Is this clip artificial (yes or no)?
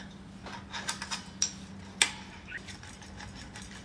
no